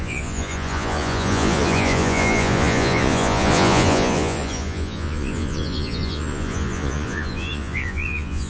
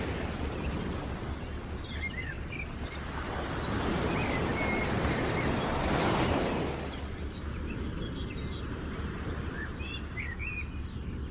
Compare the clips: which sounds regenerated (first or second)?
first